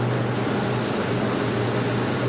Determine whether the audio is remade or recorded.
recorded